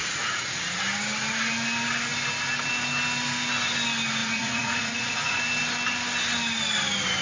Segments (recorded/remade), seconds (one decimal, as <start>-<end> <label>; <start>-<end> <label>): 0.0-0.8 remade; 0.8-4.2 recorded; 4.2-5.4 remade; 5.4-7.2 recorded